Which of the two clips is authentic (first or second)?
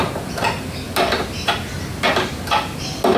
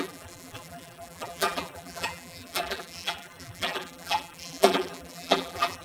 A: first